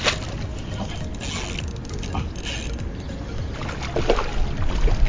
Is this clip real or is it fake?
real